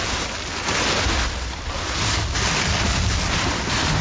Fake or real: real